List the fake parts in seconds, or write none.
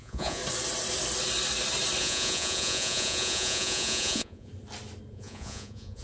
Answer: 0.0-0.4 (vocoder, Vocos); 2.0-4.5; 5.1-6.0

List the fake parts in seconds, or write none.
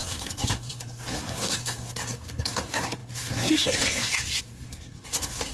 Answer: 0.0-5.5 (codec, SNAC)